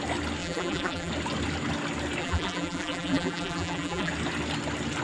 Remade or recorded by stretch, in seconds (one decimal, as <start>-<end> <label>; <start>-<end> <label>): 0.0-0.4 recorded; 0.4-1.1 remade; 1.1-2.2 recorded; 2.2-4.1 remade; 4.1-5.0 recorded